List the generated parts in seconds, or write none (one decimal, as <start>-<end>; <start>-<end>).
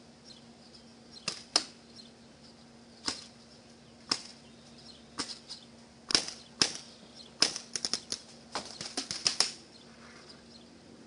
none